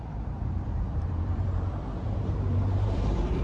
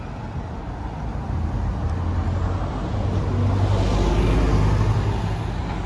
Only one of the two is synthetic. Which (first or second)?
first